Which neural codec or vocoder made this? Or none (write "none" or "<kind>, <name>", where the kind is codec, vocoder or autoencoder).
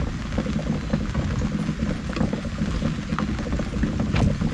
none